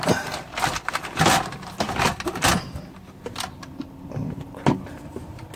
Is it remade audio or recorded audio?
recorded